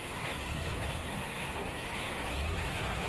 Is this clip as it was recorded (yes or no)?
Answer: no